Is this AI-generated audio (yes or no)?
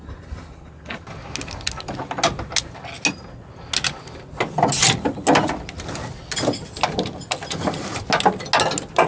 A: no